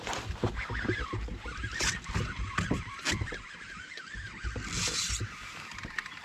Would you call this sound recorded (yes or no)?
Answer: yes